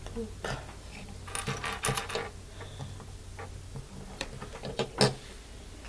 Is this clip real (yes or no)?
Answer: yes